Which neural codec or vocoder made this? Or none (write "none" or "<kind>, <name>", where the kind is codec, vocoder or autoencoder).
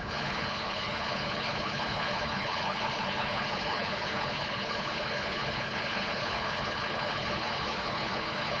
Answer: codec, HILCodec